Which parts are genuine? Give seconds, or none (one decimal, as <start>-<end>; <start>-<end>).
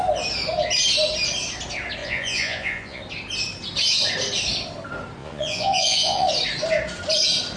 0.0-2.0; 3.0-5.2; 6.3-7.6